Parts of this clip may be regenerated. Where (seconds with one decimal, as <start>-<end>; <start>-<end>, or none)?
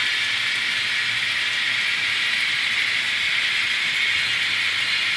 0.0-3.1